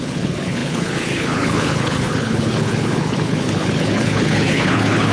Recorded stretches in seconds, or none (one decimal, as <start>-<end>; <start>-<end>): none